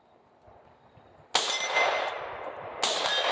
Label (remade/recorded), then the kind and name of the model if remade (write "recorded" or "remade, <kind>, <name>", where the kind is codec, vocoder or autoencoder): recorded